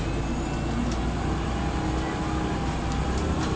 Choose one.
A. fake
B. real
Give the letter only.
B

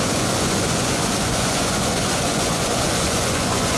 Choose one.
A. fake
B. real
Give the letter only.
A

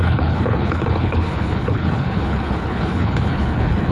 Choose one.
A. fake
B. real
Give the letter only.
A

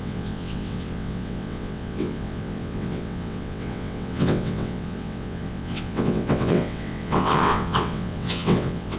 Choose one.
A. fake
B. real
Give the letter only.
A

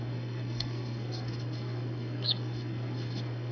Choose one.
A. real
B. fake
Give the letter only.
B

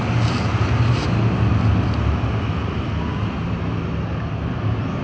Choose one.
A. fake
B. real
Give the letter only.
B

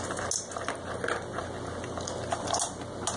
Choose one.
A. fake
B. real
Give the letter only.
B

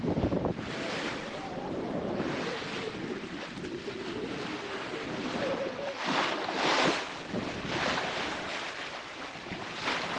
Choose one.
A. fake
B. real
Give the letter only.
A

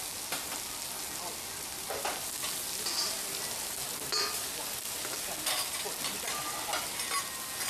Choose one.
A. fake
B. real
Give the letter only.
B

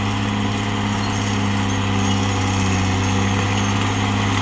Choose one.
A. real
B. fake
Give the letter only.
A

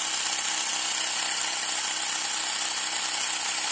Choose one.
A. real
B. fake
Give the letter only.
A